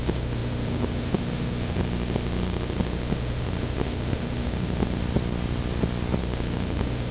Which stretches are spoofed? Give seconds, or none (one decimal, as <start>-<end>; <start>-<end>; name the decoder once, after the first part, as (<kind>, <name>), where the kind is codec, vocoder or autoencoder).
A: 0.0-5.0 (autoencoder, DAC-VAE); 6.2-7.1